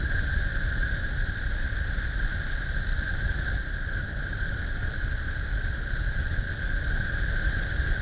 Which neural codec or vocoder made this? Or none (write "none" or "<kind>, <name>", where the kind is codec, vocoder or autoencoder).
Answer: none